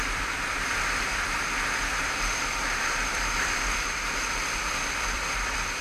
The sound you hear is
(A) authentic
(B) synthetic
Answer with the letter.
B